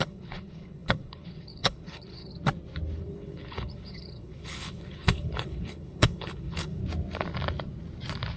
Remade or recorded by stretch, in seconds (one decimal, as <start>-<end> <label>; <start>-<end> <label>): 0.0-2.3 remade; 2.3-3.0 recorded; 3.0-6.8 remade; 6.8-8.4 recorded